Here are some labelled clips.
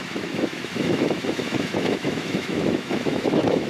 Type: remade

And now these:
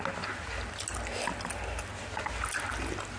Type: recorded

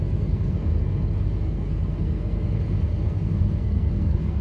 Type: remade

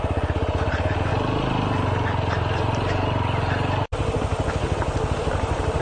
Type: recorded